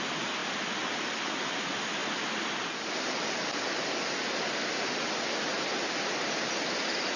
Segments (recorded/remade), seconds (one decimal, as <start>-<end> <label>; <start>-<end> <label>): 0.0-7.2 recorded